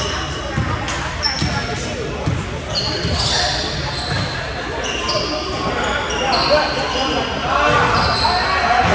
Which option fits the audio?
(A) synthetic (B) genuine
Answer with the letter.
B